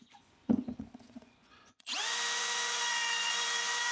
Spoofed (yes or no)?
yes